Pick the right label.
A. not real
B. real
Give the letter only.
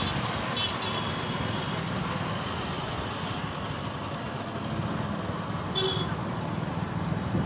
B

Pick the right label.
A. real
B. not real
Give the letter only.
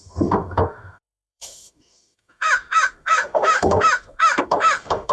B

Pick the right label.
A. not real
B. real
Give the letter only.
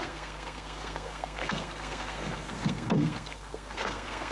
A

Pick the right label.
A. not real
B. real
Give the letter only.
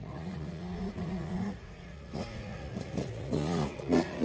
A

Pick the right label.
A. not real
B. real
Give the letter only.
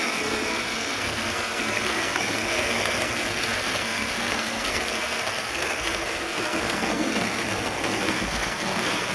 A